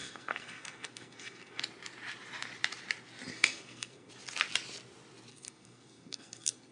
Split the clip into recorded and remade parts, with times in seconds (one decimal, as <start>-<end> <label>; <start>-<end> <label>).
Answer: 0.0-1.6 remade; 1.6-3.3 recorded; 3.3-4.1 remade; 4.1-5.3 recorded; 5.3-6.7 remade

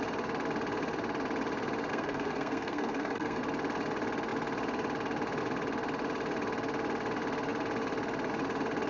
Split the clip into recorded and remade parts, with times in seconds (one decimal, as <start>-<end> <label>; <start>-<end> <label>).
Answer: 0.0-1.9 recorded; 1.9-3.4 remade; 3.4-8.9 recorded

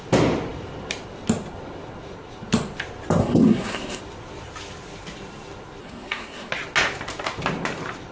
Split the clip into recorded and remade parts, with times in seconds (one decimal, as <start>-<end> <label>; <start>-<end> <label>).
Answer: 0.0-3.2 recorded; 3.2-4.0 remade; 4.0-5.8 recorded; 5.8-6.5 remade; 6.5-8.1 recorded

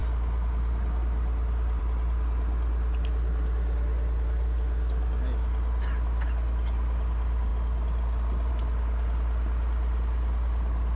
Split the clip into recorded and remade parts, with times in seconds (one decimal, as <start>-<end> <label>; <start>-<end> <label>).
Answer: 0.0-11.0 recorded